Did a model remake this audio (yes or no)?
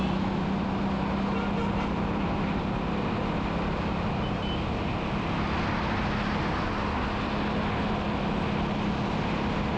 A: no